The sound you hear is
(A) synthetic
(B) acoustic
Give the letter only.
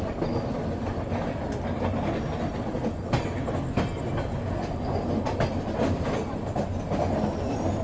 B